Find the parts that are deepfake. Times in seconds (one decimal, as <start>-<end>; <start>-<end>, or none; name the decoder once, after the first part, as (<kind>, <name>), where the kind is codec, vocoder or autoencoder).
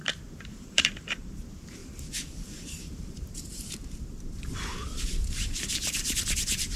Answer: 0.0-1.8 (vocoder, BigVGAN v2); 2.6-6.8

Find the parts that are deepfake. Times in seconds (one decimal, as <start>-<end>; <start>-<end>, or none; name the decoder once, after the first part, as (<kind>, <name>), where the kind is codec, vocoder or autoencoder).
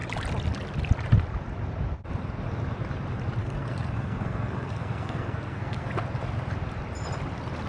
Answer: 3.4-5.9 (codec, SNAC)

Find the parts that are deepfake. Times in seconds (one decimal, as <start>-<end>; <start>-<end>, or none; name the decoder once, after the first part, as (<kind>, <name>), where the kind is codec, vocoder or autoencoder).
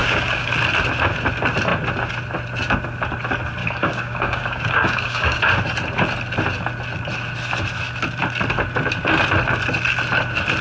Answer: 0.0-0.5 (codec, DAC); 3.6-5.4